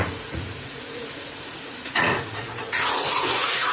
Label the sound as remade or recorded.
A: remade